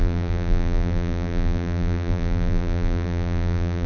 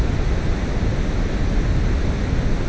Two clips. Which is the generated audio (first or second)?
first